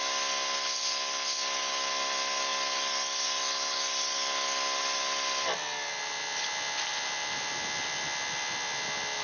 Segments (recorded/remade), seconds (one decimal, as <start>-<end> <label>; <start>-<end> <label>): 0.0-9.2 recorded